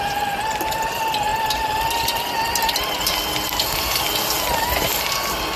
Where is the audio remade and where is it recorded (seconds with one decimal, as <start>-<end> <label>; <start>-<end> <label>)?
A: 0.0-5.6 recorded